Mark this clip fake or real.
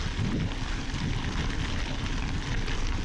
real